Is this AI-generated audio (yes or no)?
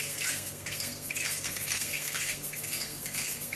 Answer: yes